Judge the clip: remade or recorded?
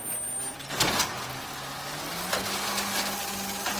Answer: recorded